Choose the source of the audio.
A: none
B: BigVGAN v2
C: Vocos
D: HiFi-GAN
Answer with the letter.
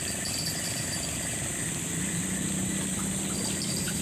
B